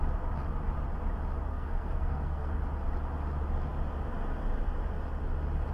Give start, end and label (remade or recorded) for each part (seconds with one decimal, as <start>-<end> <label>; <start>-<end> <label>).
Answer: 0.0-1.5 recorded; 1.5-2.6 remade; 2.6-5.7 recorded